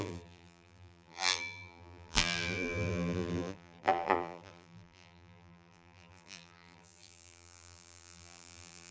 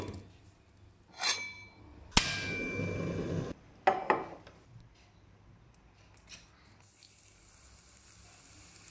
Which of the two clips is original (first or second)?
second